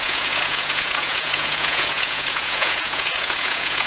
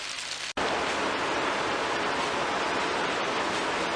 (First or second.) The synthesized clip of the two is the first